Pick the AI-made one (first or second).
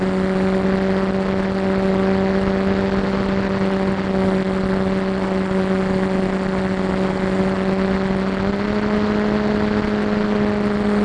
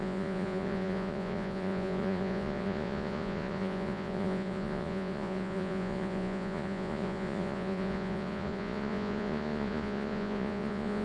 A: second